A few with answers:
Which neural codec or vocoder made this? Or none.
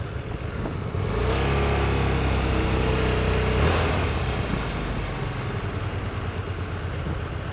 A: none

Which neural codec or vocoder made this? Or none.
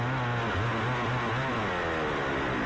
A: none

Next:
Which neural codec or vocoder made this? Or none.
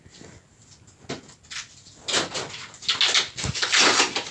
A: none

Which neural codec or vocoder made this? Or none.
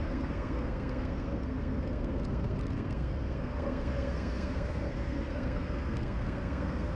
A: codec, SNAC